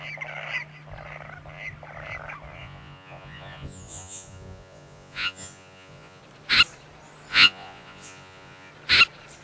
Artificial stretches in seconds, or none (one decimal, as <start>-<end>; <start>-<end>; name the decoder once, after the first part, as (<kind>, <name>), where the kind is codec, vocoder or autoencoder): 2.6-6.2 (vocoder, Vocos); 7.3-8.7